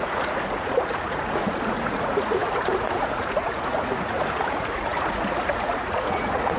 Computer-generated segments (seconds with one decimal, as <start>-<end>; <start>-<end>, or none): 0.0-6.6